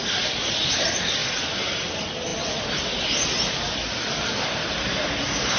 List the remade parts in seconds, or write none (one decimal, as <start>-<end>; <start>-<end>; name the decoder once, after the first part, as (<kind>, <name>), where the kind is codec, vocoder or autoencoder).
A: none